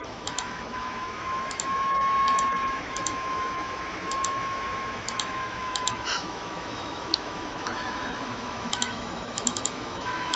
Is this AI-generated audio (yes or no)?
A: yes